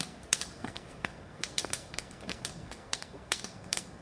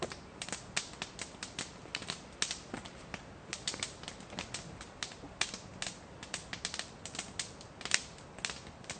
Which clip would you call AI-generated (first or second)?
first